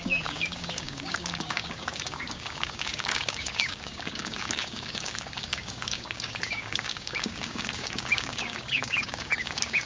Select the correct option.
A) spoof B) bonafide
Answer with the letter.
A